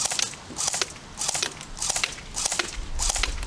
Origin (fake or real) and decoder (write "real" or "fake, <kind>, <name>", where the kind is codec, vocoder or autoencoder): real